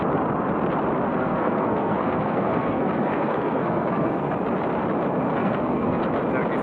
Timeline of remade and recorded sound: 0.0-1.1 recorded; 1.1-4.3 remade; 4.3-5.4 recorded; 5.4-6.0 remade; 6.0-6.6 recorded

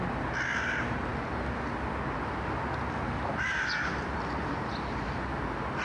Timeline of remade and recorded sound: 0.0-5.8 recorded

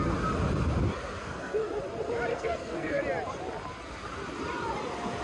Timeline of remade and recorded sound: 0.0-1.2 recorded; 1.2-1.7 remade; 1.7-2.3 recorded; 2.3-3.0 remade; 3.0-5.2 recorded

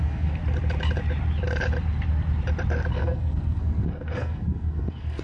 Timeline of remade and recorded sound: 0.0-0.4 remade; 0.4-2.9 recorded; 2.9-5.2 remade

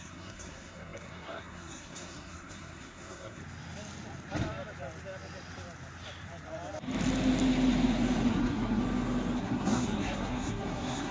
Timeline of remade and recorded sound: 0.0-3.4 remade; 3.4-8.3 recorded; 8.3-8.8 remade; 8.8-9.4 recorded; 9.4-11.1 remade

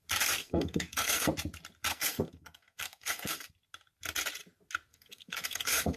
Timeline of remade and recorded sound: 0.0-0.4 recorded; 0.4-1.3 remade; 1.3-1.9 recorded; 1.9-3.5 remade; 3.5-4.9 recorded; 4.9-6.0 remade

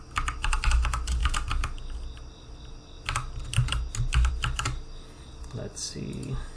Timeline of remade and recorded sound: 0.0-6.6 recorded